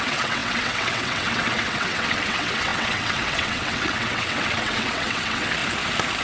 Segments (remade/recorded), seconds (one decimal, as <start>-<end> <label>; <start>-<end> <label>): 0.0-5.6 remade; 5.6-6.2 recorded